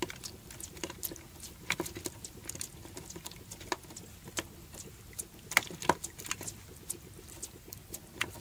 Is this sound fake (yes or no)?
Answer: no